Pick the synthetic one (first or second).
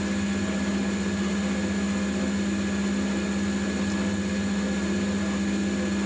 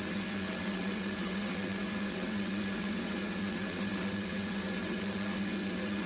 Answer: second